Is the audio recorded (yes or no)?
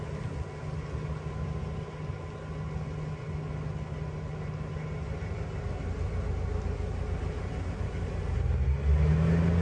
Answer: yes